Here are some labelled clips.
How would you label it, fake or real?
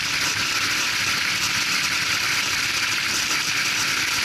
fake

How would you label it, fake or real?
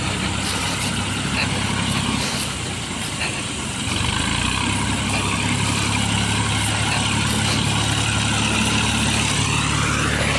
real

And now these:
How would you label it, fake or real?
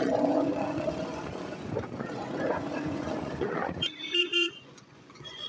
fake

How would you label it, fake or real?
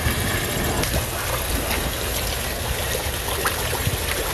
real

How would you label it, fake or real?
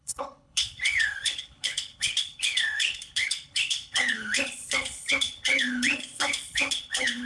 fake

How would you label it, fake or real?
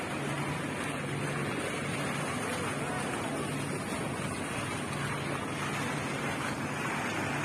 real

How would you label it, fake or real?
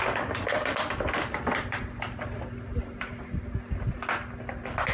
real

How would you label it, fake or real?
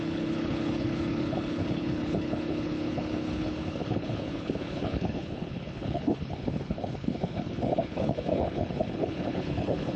fake